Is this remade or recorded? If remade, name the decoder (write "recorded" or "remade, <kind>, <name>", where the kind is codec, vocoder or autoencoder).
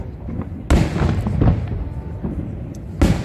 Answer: recorded